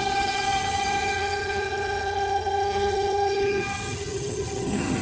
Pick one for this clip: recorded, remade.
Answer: remade